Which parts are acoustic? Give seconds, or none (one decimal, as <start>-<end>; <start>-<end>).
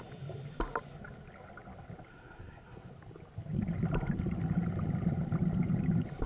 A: 0.0-2.1; 2.9-6.3